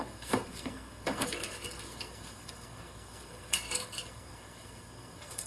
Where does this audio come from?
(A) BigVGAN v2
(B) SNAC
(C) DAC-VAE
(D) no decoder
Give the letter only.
B